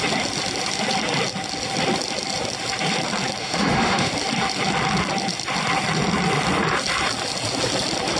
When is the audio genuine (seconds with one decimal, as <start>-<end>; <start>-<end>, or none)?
0.0-3.4; 4.1-8.2